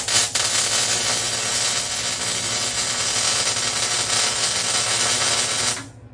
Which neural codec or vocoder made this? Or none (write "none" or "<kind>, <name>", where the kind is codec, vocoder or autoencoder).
none